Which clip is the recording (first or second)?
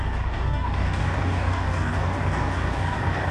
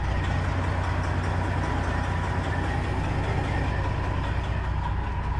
second